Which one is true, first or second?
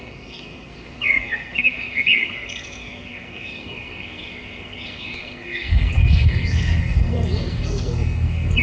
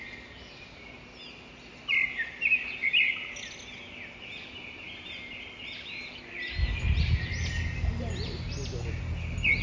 second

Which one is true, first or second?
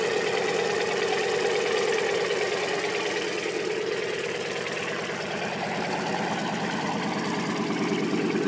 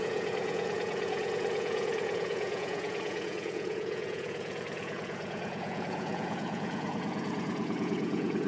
first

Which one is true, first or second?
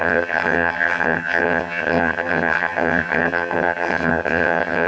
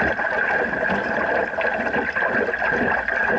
second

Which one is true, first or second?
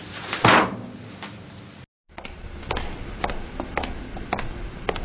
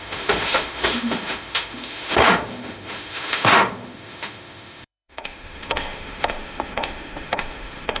first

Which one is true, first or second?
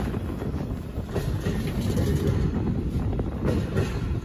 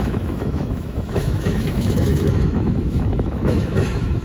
first